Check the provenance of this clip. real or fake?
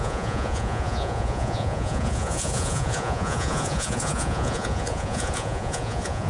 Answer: fake